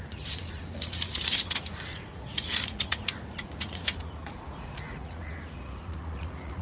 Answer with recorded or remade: remade